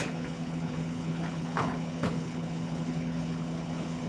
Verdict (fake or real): fake